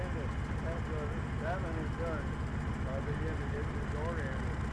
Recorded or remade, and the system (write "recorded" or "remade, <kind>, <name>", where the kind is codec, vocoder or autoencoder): recorded